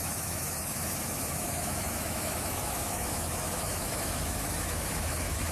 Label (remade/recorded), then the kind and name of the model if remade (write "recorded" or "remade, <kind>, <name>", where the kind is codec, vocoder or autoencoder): remade, autoencoder, DAC-VAE